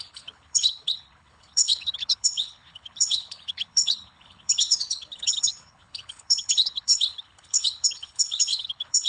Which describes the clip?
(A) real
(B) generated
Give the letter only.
B